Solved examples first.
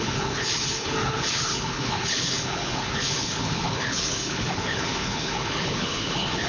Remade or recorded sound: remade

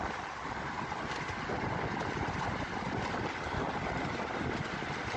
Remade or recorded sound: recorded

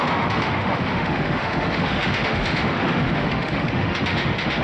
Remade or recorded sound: remade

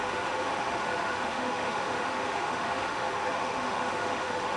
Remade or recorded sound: remade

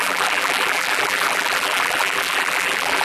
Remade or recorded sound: remade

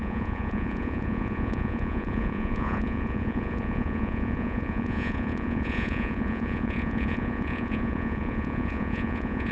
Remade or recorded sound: remade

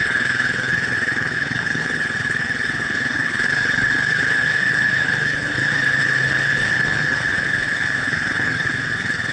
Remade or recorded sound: remade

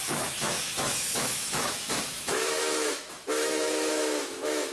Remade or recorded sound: remade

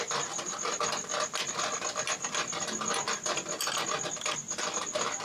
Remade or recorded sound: recorded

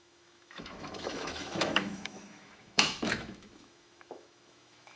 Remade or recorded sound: remade